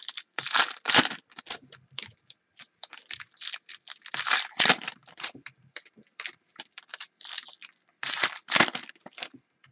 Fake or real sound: fake